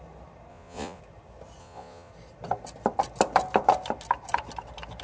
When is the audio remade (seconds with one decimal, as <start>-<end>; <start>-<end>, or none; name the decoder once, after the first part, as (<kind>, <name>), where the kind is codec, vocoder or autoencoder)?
0.5-1.0 (vocoder, Vocos); 1.6-2.1